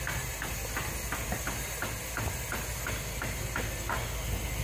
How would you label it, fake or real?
real